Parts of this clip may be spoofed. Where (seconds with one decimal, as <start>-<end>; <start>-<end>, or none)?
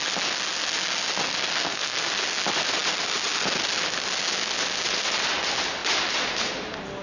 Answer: 1.5-2.1